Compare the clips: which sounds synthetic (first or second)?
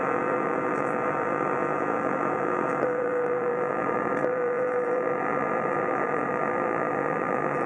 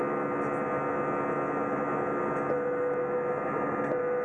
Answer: first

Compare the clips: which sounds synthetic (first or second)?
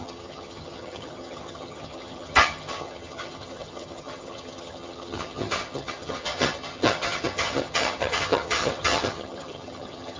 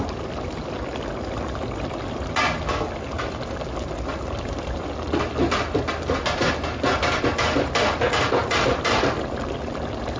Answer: first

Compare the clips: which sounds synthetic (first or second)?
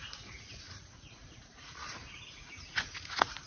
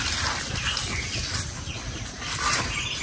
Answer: first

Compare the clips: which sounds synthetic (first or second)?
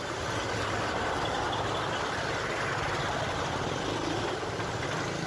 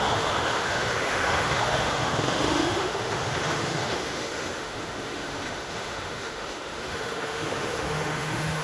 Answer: second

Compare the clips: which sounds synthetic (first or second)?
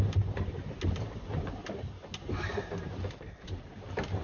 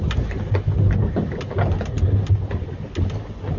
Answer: first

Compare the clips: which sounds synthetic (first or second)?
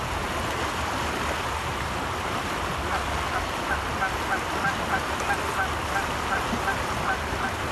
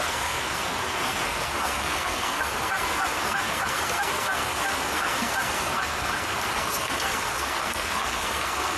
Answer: second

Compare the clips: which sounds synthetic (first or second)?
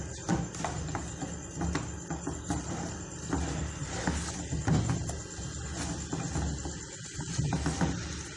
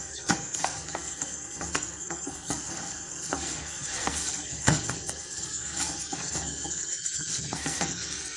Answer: second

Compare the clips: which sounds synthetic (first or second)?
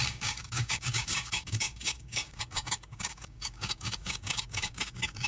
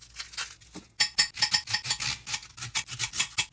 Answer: first